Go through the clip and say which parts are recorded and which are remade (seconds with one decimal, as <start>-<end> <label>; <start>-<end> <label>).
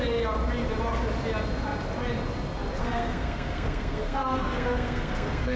0.0-2.8 recorded; 2.8-5.6 remade